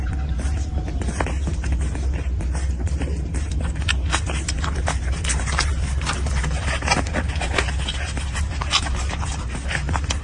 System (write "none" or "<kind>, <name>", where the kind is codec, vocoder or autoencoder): vocoder, BigVGAN v2